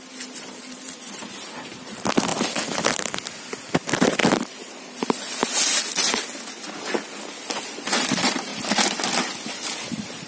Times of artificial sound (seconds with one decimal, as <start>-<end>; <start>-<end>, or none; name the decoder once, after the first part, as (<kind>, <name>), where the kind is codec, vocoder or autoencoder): 0.0-4.2 (vocoder, BigVGAN v2); 4.8-5.4; 7.7-8.5; 9.2-10.3